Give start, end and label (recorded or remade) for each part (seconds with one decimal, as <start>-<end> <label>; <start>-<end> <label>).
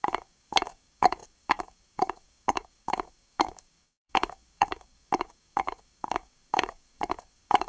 0.0-7.7 remade